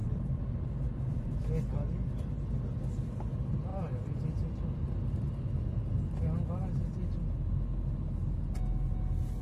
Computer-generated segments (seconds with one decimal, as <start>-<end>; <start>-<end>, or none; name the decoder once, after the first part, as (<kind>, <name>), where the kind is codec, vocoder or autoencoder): 3.7-4.2 (vocoder, BigVGAN v2)